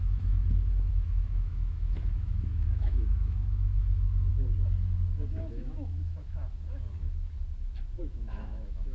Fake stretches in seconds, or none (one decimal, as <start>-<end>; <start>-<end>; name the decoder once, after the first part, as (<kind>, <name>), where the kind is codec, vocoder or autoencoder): 0.0-0.4 (autoencoder, DAC-VAE); 0.9-4.3; 5.5-6.4; 8.0-8.9